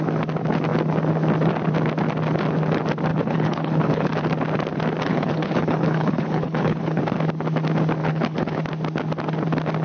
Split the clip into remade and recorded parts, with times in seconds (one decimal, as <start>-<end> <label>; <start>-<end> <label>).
0.0-3.1 recorded; 3.1-4.1 remade; 4.1-5.1 recorded; 5.1-7.0 remade; 7.0-8.0 recorded; 8.0-8.6 remade; 8.6-9.8 recorded